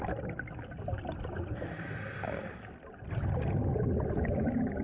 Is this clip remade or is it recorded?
recorded